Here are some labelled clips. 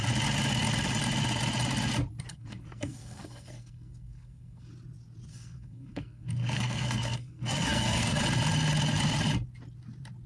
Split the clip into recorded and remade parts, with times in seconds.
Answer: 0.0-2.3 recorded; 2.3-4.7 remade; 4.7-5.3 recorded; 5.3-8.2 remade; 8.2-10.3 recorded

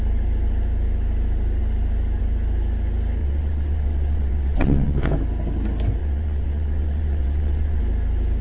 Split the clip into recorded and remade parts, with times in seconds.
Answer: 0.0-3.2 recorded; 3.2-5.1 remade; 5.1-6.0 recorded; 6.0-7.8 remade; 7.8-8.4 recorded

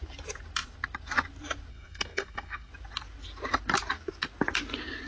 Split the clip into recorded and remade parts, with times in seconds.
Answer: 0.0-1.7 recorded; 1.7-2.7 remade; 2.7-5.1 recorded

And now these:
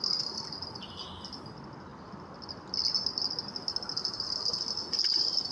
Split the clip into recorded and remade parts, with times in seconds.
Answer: 0.0-5.5 recorded